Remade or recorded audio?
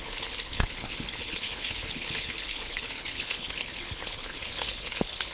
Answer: remade